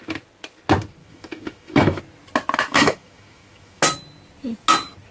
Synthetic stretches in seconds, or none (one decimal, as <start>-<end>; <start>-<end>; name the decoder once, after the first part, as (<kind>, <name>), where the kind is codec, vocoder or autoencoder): 1.0-2.0 (autoencoder, DAC-VAE); 2.7-3.8